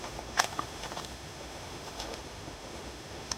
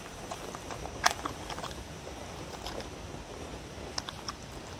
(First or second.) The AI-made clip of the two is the first